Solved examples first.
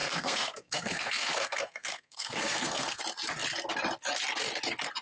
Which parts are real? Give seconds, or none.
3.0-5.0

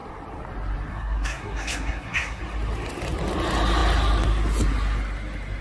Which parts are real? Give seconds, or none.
0.0-0.9; 2.4-5.6

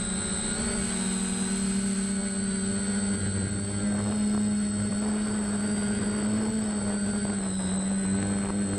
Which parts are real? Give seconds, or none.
0.0-8.8

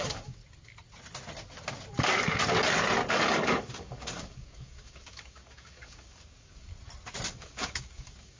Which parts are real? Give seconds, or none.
0.4-3.1; 6.7-7.3

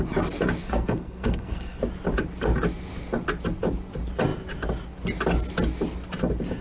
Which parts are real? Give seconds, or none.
0.0-0.6; 1.8-6.6

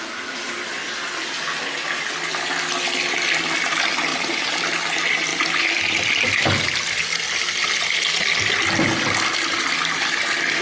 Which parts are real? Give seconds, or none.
0.0-4.1; 4.6-10.6

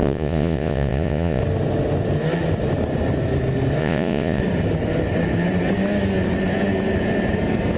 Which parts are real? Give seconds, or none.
1.4-3.8; 4.4-7.8

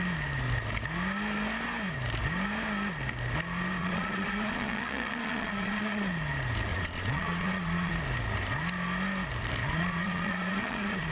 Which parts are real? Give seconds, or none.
0.0-3.8; 6.1-6.7; 7.9-9.6